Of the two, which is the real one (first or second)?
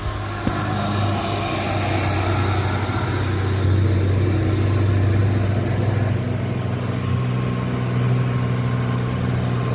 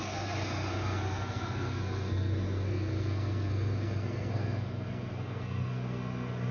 first